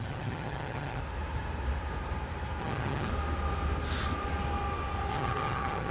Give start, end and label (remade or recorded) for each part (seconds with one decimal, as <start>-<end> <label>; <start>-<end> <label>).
0.0-1.0 remade; 1.0-2.6 recorded; 2.6-3.1 remade; 3.1-5.1 recorded; 5.1-5.9 remade